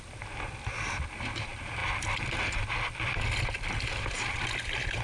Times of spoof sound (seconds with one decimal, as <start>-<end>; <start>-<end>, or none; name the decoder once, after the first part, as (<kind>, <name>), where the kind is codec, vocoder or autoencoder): none